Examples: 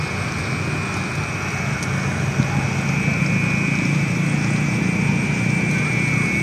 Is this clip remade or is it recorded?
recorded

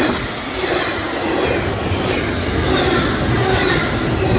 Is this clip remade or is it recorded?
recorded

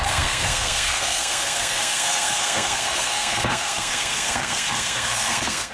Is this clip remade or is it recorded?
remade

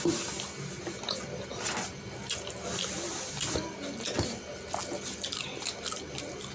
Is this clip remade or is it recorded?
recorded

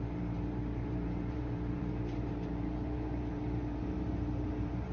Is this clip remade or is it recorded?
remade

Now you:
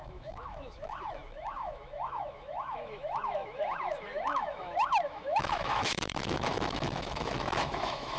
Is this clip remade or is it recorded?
remade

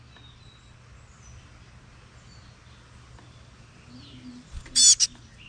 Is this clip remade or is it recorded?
recorded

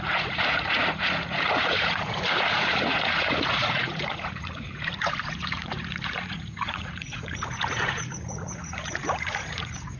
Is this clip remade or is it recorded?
remade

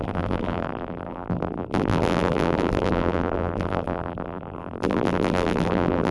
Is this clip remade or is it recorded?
remade